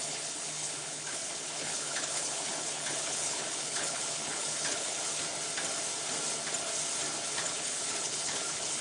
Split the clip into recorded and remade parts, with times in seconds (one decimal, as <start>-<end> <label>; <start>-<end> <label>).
0.0-5.1 remade; 5.1-7.3 recorded; 7.3-8.8 remade